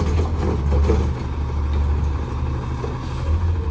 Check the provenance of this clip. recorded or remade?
recorded